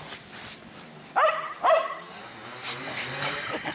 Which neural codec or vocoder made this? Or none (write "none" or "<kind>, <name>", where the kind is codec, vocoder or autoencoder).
none